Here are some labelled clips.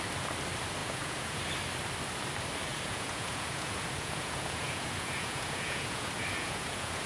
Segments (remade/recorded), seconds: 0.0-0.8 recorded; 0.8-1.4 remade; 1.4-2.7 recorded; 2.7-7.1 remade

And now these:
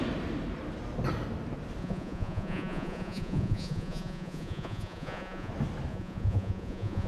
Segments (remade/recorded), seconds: 0.0-1.8 recorded; 1.8-5.5 remade; 5.5-5.9 recorded; 5.9-7.1 remade